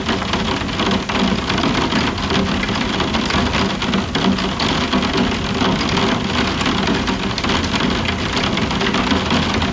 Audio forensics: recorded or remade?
recorded